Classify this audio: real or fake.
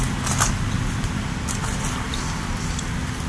real